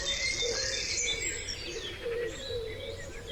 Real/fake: real